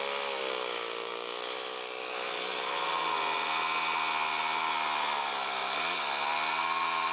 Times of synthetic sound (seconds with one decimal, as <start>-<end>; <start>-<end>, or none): none